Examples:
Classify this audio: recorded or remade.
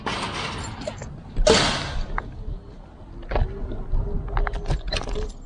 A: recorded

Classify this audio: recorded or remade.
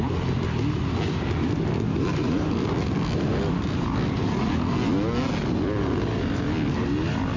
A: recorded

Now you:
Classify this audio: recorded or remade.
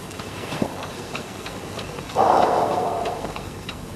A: remade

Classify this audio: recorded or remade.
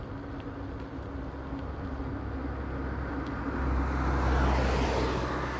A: recorded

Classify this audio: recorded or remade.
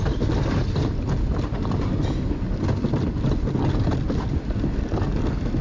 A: recorded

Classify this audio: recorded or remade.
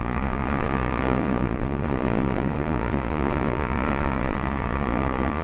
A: remade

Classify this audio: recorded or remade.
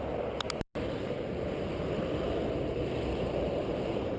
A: recorded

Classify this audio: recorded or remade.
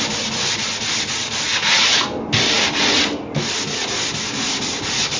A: recorded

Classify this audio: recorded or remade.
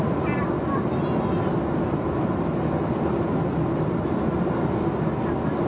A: recorded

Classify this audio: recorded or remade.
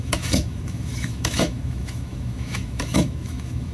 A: remade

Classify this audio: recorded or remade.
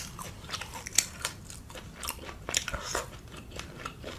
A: remade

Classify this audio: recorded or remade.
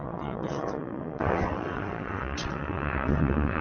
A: remade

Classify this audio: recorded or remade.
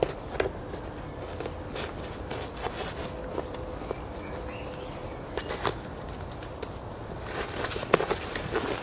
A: recorded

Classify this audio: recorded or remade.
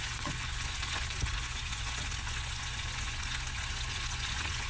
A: remade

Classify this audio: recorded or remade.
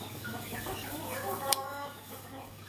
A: remade